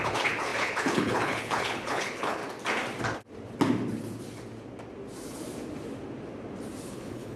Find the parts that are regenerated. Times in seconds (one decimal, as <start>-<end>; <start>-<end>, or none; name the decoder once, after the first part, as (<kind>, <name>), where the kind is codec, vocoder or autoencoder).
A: 0.0-2.4 (codec, HILCodec); 6.8-7.4